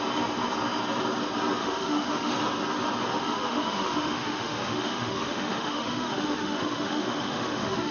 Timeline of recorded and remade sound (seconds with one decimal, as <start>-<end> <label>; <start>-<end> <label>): 0.0-1.6 recorded; 1.6-2.3 remade; 2.3-3.2 recorded; 3.2-7.9 remade